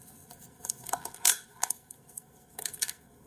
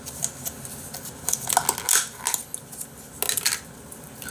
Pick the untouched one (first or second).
second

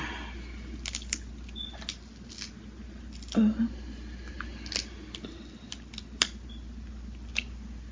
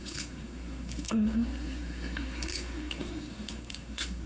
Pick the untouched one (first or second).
first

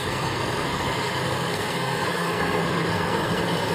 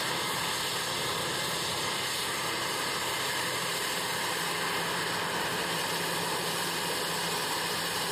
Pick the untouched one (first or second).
second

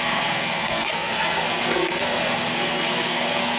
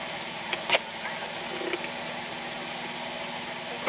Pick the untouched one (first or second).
second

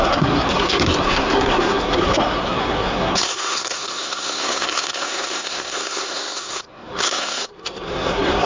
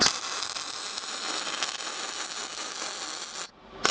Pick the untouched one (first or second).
second